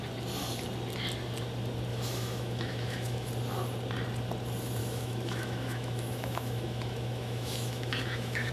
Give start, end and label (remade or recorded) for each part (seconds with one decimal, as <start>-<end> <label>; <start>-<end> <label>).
0.0-1.9 recorded; 1.9-3.3 remade; 3.3-4.8 recorded; 4.8-8.5 remade